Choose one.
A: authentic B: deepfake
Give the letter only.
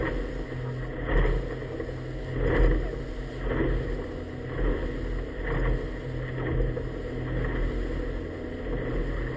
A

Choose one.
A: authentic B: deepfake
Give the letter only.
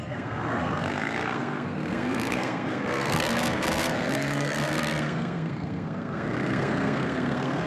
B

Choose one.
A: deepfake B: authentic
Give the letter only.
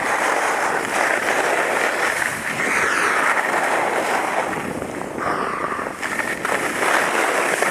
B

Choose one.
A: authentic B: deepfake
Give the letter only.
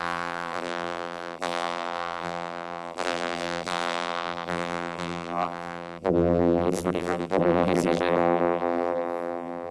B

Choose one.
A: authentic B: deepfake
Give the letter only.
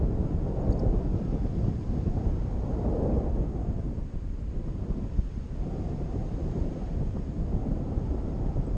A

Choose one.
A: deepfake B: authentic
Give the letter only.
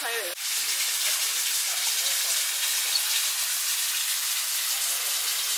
B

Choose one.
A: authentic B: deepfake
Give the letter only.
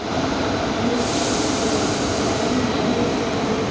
B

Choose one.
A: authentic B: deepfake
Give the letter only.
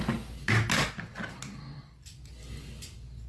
A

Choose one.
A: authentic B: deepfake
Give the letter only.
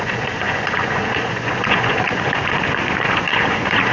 B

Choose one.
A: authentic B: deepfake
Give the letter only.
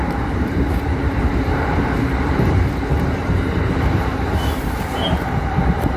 B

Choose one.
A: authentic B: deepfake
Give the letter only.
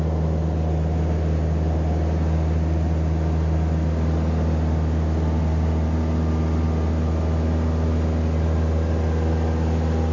A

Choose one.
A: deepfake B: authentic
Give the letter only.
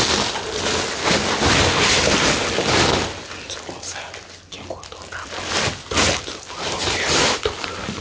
B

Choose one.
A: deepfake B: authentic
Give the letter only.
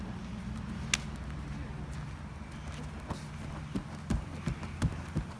B